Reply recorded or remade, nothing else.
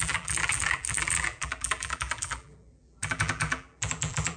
remade